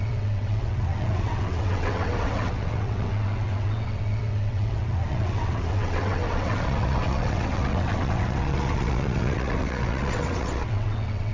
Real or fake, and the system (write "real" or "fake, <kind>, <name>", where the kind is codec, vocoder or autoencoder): fake, vocoder, WaveNeXt